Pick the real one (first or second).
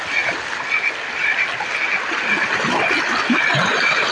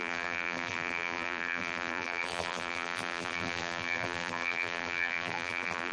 first